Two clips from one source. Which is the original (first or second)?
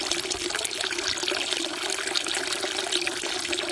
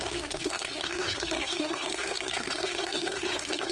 first